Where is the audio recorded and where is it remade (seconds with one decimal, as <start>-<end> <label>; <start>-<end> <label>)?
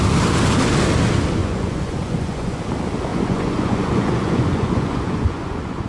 0.0-1.4 recorded; 1.4-2.6 remade; 2.6-3.1 recorded; 3.1-5.9 remade